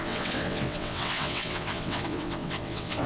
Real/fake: fake